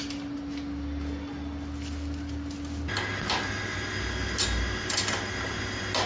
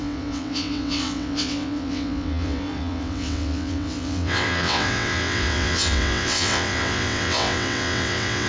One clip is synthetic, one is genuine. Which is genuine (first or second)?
first